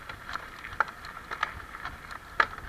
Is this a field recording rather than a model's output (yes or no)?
yes